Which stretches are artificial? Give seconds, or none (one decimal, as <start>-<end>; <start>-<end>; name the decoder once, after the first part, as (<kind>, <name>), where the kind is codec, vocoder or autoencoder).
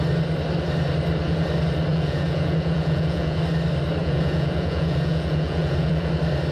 1.9-3.4 (vocoder, Vocos); 4.0-6.1